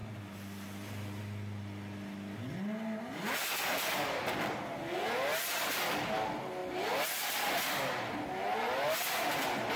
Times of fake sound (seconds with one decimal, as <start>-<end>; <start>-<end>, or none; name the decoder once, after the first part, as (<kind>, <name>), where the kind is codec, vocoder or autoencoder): none